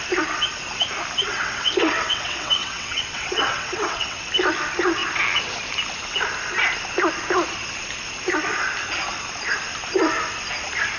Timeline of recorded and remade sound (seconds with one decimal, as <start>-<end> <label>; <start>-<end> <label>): 0.0-1.3 recorded; 1.3-4.2 remade; 4.2-11.0 recorded